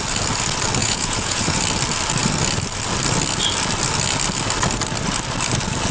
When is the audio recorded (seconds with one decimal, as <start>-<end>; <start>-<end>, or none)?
0.0-0.8; 1.6-5.9